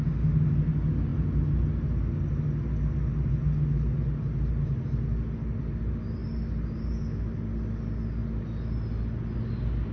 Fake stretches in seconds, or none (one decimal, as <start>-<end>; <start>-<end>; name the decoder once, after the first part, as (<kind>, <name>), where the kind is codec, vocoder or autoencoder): none